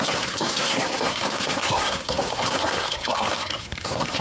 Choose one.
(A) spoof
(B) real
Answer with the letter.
A